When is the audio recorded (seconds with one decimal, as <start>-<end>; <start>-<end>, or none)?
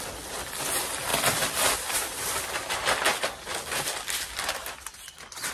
0.0-1.1; 4.4-5.5